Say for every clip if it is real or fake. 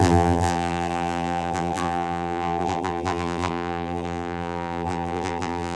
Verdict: fake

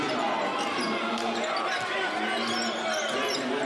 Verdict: real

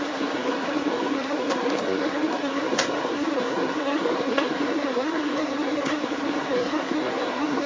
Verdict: fake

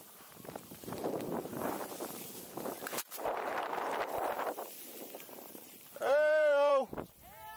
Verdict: fake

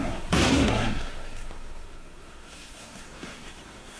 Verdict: fake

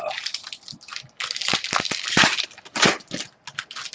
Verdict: real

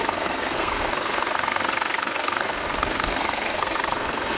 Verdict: fake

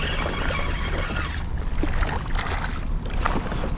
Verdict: real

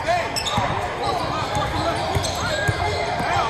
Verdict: real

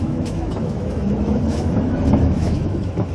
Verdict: fake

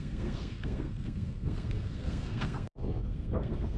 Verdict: fake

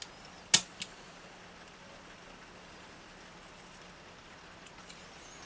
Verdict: real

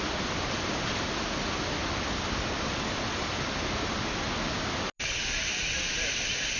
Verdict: real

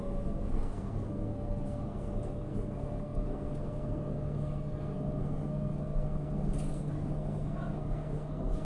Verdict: fake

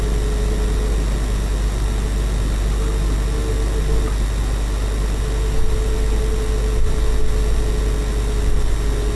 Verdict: real